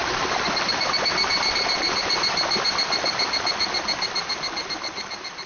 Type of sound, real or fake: fake